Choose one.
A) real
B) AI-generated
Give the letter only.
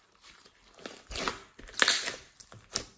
A